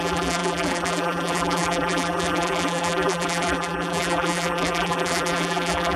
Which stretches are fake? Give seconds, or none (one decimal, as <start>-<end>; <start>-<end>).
0.0-6.0